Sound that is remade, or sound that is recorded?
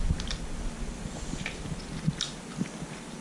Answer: remade